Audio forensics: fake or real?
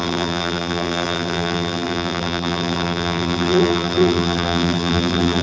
fake